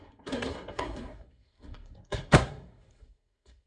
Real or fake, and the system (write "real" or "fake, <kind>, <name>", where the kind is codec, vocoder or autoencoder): fake, codec, SNAC